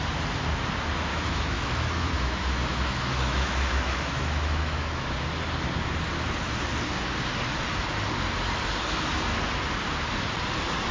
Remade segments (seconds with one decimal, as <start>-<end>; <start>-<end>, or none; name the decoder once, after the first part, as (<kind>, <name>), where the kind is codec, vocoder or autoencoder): 1.1-5.1 (autoencoder, DAC-VAE)